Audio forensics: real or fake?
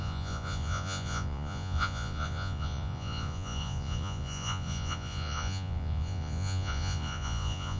fake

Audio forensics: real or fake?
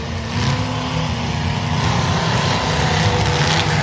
real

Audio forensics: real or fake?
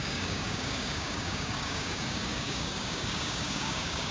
fake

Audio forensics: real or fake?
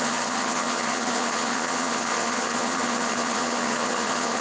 fake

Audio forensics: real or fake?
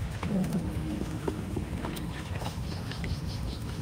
fake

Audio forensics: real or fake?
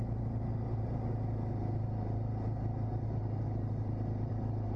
real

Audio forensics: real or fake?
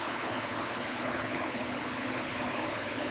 fake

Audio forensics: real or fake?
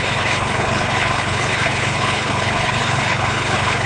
fake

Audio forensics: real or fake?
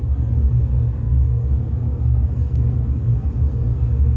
fake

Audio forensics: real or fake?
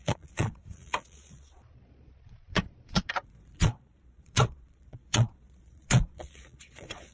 fake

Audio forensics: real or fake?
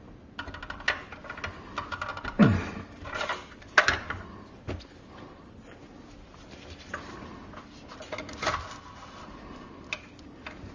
real